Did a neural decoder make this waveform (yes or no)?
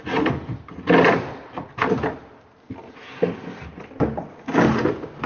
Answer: no